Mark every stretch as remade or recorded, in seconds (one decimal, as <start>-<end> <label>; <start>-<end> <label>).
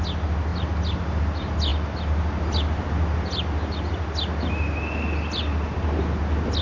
0.0-6.6 recorded